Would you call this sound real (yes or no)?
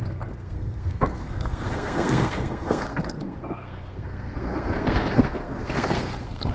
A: no